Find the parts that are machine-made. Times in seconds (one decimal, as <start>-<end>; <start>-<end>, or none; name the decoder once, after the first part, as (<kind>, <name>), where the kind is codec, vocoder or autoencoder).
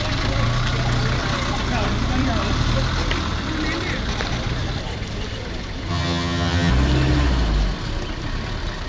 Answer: 5.9-6.7 (vocoder, HiFi-GAN)